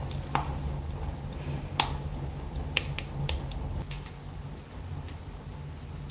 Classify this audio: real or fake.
real